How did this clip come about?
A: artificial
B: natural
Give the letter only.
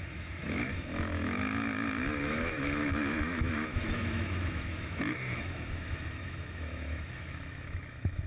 A